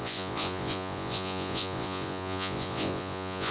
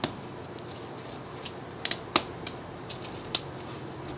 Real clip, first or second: second